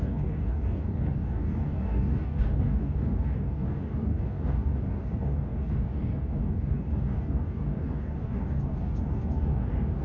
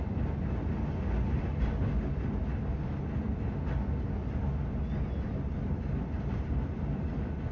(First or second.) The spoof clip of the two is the first